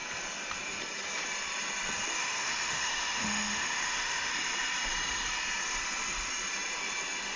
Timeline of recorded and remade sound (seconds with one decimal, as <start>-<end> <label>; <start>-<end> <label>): 0.0-2.2 recorded; 2.2-4.3 remade; 4.3-7.4 recorded